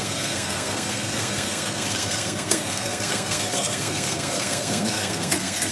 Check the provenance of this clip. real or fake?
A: fake